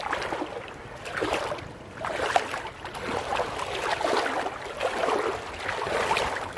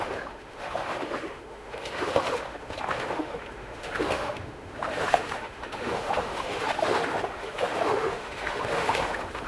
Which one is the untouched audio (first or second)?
first